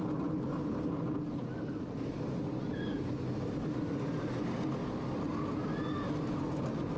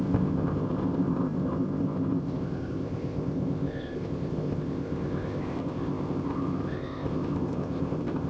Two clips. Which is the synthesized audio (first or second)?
second